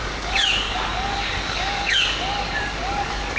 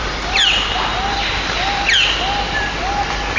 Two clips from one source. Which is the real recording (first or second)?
second